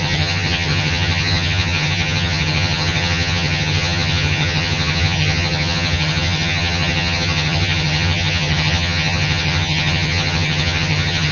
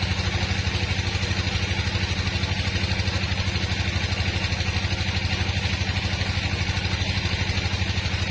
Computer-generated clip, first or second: first